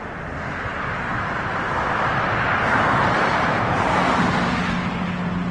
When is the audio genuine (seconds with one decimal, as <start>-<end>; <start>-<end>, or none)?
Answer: 0.0-3.2; 4.0-5.5